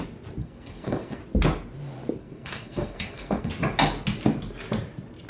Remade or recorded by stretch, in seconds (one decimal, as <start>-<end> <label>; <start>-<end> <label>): 0.0-0.4 recorded; 0.4-1.2 remade; 1.2-2.2 recorded; 2.2-3.5 remade; 3.5-5.3 recorded